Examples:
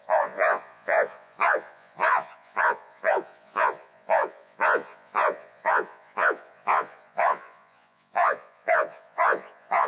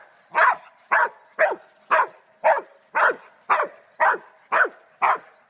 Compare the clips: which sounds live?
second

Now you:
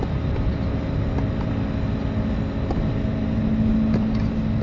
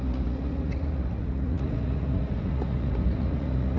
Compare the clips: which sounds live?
first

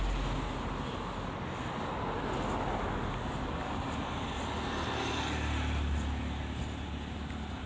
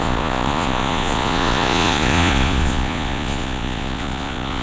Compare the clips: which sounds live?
first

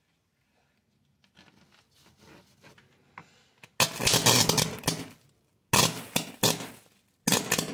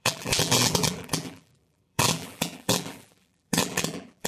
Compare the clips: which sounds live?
first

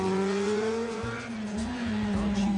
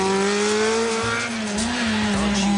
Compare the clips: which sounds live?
second